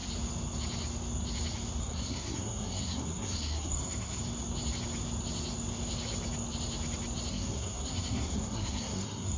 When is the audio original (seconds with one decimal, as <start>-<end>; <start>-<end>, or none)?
0.0-1.8; 4.2-7.3